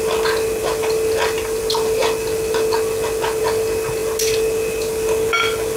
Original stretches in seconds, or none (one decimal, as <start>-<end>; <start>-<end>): 0.0-5.8